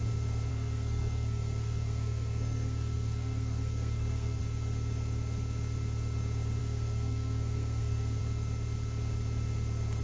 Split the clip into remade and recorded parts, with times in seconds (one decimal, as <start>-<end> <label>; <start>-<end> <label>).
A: 0.0-0.5 recorded; 0.5-4.4 remade; 4.4-6.6 recorded; 6.6-8.2 remade; 8.2-10.0 recorded